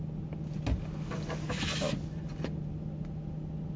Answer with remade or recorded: recorded